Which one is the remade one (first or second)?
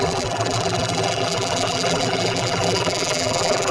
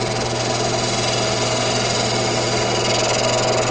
first